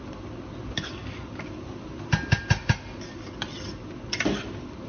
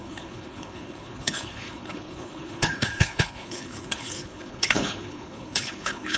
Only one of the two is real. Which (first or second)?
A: first